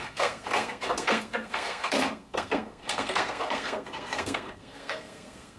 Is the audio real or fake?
fake